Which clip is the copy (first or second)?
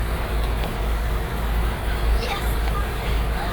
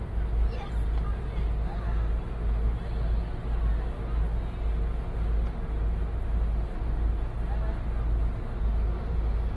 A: first